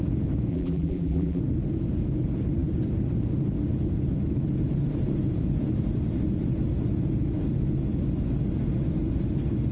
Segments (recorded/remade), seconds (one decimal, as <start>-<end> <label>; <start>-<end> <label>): 0.0-0.5 recorded; 0.5-1.4 remade; 1.4-9.7 recorded